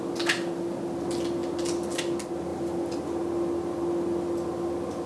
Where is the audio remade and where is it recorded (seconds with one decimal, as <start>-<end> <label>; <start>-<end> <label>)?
0.0-5.1 recorded